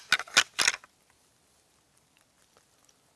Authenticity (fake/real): real